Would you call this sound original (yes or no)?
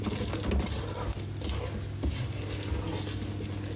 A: yes